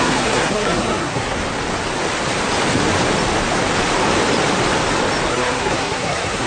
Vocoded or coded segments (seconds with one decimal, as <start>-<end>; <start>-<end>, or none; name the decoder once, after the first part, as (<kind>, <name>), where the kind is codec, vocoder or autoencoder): 0.0-1.4 (codec, SNAC); 5.3-6.5